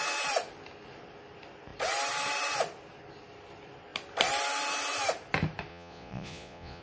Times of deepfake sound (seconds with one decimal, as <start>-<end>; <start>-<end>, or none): 5.7-6.8